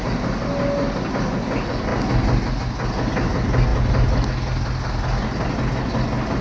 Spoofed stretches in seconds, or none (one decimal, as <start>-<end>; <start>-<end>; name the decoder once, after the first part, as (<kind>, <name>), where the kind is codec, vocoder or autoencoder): none